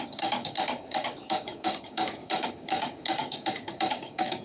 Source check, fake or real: fake